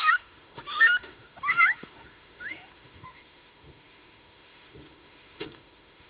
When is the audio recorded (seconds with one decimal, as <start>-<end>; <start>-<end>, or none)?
none